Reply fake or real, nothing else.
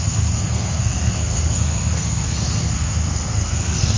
fake